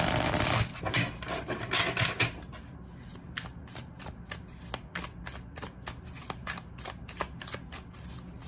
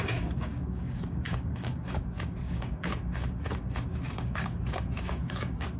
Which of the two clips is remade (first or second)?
second